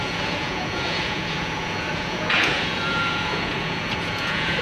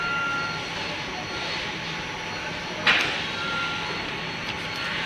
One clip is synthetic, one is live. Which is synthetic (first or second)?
first